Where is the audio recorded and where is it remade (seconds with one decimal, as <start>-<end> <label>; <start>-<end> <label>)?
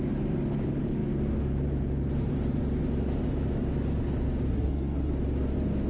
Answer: 0.0-4.5 recorded; 4.5-5.1 remade; 5.1-5.9 recorded